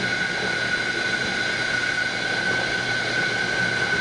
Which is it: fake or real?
real